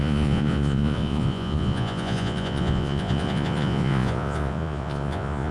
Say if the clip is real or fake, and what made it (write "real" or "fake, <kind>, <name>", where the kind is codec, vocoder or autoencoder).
fake, vocoder, Vocos